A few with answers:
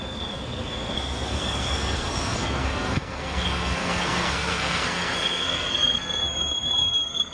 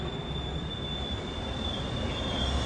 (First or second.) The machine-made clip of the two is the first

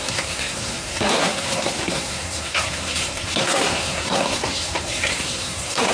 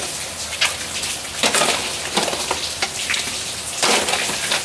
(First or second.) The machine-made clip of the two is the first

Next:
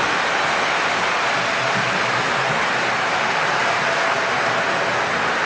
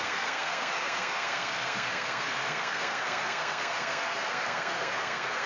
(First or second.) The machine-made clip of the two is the second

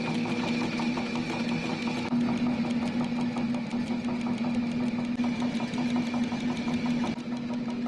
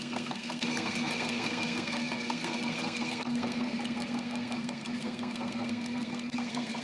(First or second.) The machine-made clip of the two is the second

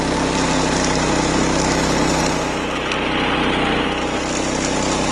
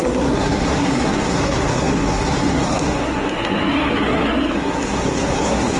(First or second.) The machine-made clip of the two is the second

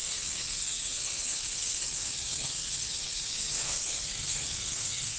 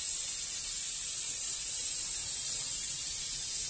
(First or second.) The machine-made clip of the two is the first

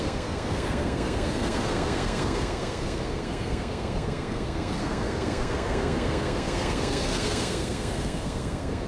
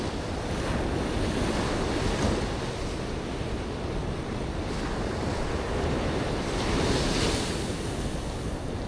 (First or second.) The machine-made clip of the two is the first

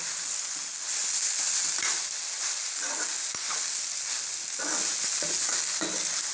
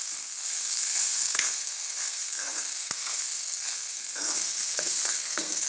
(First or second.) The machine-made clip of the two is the second